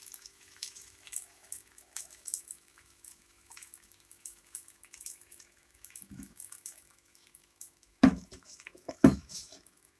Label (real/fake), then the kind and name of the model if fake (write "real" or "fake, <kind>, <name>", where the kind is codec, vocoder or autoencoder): fake, autoencoder, DAC-VAE